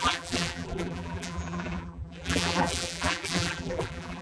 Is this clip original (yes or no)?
no